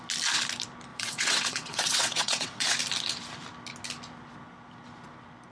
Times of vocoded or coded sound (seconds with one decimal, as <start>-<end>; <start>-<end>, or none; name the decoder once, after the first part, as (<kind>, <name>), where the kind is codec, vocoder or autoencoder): 0.9-2.8 (vocoder, WaveNeXt)